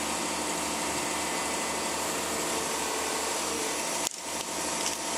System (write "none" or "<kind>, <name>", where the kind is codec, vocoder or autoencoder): none